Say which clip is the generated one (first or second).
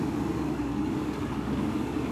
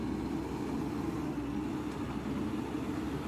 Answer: first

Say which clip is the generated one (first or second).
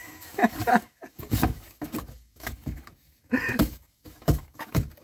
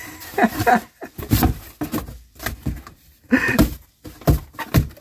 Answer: first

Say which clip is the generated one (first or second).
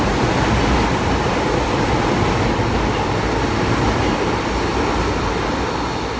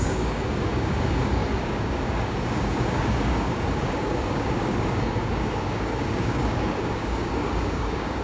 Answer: second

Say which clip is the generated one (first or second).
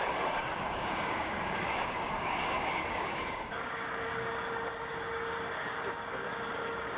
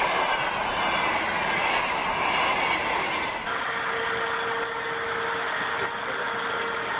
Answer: first